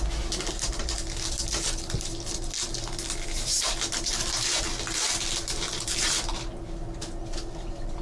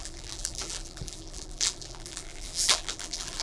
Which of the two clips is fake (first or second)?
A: second